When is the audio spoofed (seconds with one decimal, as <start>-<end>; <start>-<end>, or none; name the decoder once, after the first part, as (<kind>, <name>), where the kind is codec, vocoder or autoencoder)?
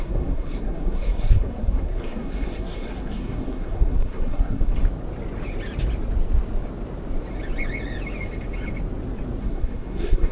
0.0-4.7 (codec, SNAC); 9.4-10.3